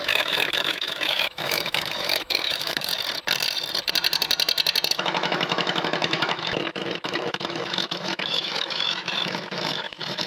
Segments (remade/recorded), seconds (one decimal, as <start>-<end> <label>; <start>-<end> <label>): 0.0-2.9 remade; 2.9-4.9 recorded; 4.9-10.3 remade